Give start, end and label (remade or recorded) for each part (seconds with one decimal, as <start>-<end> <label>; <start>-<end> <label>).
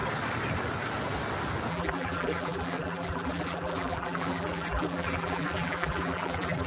0.0-1.7 recorded; 1.7-6.7 remade